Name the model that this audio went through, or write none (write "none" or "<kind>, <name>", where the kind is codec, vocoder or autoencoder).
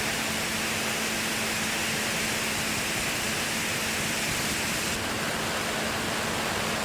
none